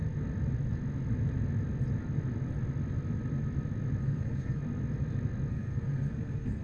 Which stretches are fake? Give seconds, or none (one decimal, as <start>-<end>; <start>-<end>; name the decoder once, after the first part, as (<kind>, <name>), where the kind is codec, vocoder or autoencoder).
4.0-4.6 (codec, SNAC); 5.5-6.6